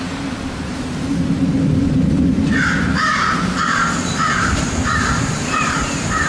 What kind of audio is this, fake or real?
fake